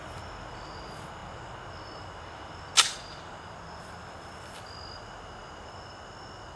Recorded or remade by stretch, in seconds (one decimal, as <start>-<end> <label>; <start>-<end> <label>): 0.0-6.6 recorded